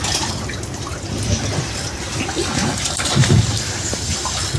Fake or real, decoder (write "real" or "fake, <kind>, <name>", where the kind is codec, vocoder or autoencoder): real